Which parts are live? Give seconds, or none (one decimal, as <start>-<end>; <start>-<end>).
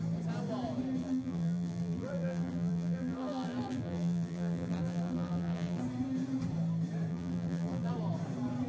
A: 0.0-1.0; 5.8-7.1; 7.9-8.7